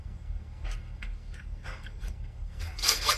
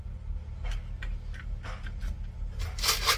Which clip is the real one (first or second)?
second